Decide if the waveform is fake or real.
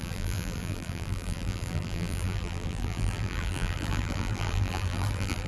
fake